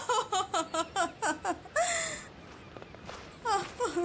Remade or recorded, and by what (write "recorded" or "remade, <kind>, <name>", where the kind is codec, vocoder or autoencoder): recorded